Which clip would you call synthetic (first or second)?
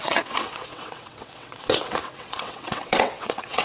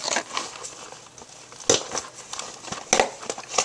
first